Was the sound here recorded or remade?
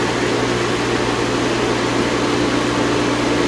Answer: recorded